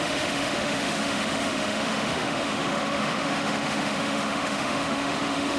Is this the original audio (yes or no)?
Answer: no